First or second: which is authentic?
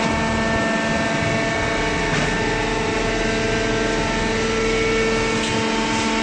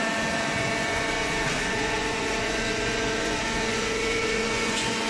first